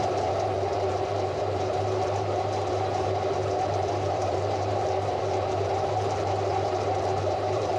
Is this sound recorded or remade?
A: remade